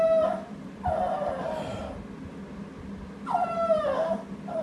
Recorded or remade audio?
recorded